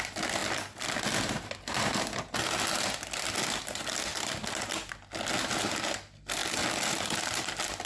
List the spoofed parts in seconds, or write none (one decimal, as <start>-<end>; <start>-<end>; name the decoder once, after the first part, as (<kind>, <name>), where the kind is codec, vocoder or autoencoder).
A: 6.4-7.0 (vocoder, BigVGAN v2)